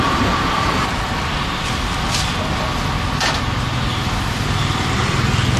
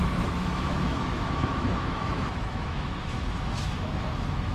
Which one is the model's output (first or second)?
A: second